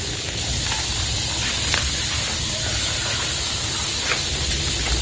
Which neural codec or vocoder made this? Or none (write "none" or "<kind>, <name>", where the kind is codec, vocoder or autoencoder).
none